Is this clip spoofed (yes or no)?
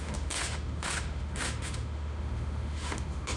yes